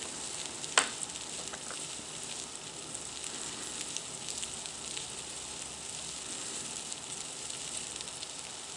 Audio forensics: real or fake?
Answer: real